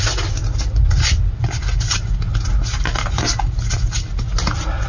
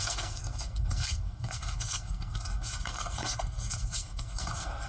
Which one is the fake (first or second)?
second